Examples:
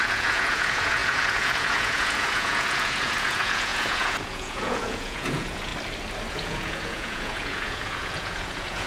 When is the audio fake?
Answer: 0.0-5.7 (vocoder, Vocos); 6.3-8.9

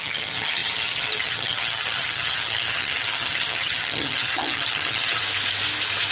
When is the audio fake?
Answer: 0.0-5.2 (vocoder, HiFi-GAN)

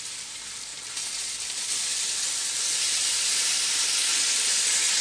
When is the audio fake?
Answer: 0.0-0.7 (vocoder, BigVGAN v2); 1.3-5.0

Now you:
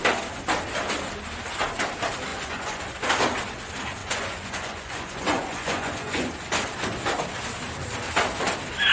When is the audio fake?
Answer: 2.3-2.8 (vocoder, Vocos); 4.0-6.3

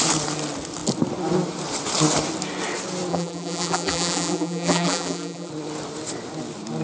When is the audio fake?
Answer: 3.1-5.5 (vocoder, BigVGAN v2)

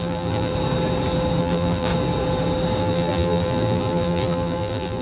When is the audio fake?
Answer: 0.0-0.5 (vocoder, BigVGAN v2); 1.4-1.9; 2.8-5.0

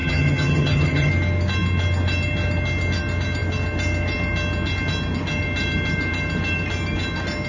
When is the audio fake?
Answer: 0.0-1.1 (vocoder, HiFi-GAN)